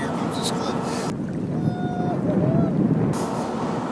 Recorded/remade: recorded